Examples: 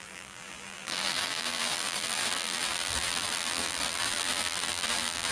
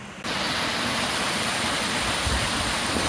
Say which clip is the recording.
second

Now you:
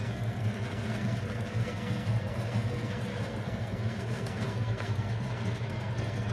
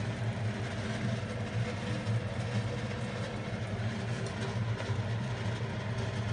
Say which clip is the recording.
second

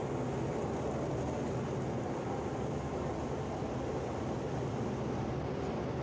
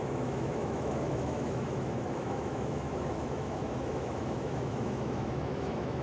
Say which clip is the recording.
first